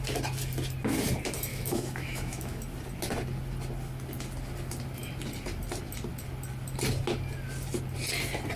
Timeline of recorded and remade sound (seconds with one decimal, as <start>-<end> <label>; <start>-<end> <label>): 0.0-1.5 recorded; 1.5-2.6 remade; 2.6-8.6 recorded